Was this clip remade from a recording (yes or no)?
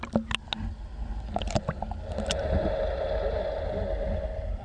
no